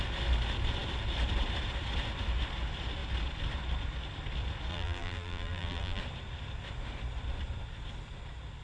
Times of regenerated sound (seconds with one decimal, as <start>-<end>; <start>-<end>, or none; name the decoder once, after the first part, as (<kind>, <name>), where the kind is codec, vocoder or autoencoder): 4.7-6.0 (vocoder, BigVGAN v2)